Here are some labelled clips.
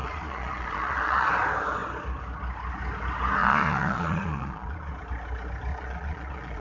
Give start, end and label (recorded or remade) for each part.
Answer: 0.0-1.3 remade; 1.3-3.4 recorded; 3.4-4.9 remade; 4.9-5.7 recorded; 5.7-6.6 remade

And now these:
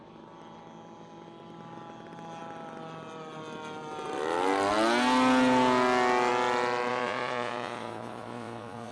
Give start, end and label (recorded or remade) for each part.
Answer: 0.0-6.9 recorded; 6.9-8.9 remade

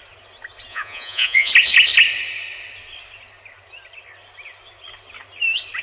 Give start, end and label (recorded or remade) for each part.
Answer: 0.0-0.7 recorded; 0.7-1.5 remade; 1.5-5.8 recorded

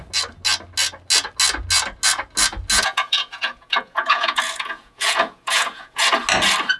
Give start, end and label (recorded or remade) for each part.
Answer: 0.0-2.7 recorded; 2.7-6.0 remade; 6.0-6.8 recorded

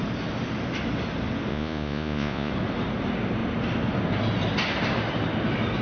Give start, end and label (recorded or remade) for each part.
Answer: 0.0-1.5 recorded; 1.5-2.5 remade; 2.5-5.8 recorded

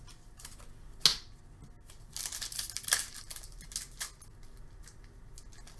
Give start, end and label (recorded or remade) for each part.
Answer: 0.0-5.8 recorded

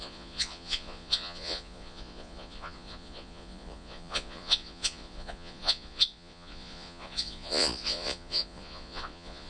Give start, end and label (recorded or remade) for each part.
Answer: 0.0-9.5 remade